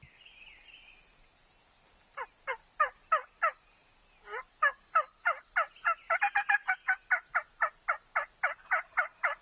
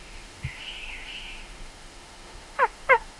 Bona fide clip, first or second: first